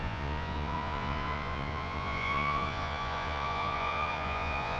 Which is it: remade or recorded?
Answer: remade